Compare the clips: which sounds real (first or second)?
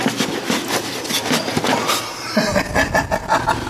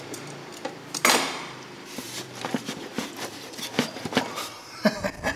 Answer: first